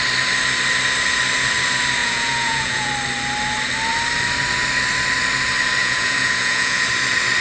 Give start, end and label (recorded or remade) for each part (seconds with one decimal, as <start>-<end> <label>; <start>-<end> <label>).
0.0-2.0 recorded; 2.0-2.9 remade; 2.9-5.8 recorded; 5.8-6.8 remade; 6.8-7.4 recorded